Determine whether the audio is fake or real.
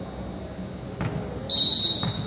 real